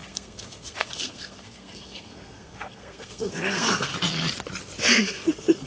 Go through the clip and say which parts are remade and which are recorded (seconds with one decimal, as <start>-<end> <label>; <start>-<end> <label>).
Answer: 0.0-3.9 remade; 3.9-4.9 recorded; 4.9-5.7 remade